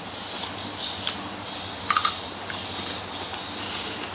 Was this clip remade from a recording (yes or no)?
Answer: no